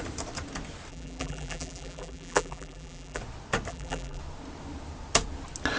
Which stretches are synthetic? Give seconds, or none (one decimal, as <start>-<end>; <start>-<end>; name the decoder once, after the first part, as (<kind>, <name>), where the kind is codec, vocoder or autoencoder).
0.9-3.2 (vocoder, BigVGAN v2); 3.7-4.2